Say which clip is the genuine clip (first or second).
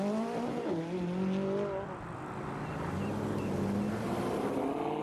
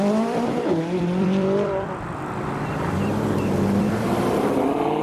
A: first